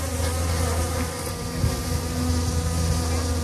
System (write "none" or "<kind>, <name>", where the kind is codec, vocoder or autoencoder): none